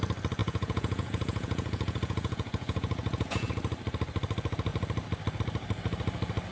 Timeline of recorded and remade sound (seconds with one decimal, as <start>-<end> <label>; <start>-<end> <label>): 0.0-0.4 recorded; 0.4-3.5 remade; 3.5-6.5 recorded